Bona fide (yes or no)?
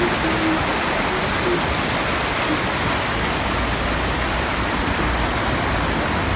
yes